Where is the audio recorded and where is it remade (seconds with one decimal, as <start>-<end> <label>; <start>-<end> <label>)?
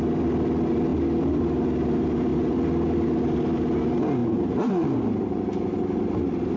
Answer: 0.0-4.2 recorded; 4.2-4.7 remade; 4.7-6.6 recorded